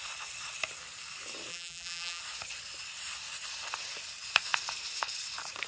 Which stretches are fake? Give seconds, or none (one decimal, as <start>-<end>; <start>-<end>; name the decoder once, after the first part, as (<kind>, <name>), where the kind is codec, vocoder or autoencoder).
1.5-2.2 (vocoder, BigVGAN v2)